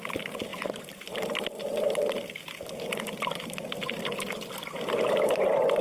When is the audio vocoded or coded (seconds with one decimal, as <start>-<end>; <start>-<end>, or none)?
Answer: 0.5-2.1

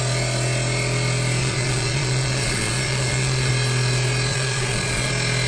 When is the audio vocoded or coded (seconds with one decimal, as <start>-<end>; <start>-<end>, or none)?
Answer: 1.4-3.5; 4.3-5.1

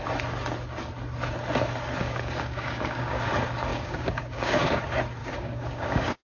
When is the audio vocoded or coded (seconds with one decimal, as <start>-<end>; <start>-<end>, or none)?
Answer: 2.0-3.3; 3.7-4.8; 5.2-6.3

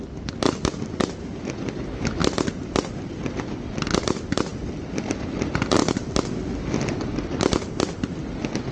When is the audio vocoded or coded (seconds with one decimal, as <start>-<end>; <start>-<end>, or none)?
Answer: none

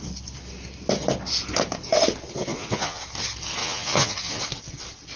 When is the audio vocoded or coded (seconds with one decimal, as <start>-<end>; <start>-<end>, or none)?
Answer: 2.5-3.0; 3.6-4.4

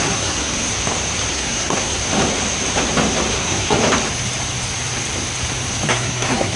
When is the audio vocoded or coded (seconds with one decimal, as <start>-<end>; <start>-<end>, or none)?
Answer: 0.0-0.7; 1.3-2.0; 3.3-3.8; 5.9-6.6